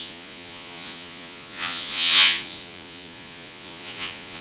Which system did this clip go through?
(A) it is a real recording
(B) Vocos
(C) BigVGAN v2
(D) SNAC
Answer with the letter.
B